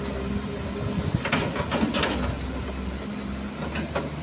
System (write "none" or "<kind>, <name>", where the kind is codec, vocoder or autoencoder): none